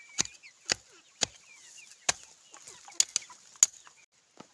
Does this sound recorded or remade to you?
recorded